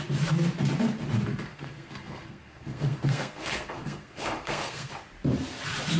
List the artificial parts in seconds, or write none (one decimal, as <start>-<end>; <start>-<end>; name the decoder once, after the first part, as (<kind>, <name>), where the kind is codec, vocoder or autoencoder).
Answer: 1.3-4.9 (codec, SNAC)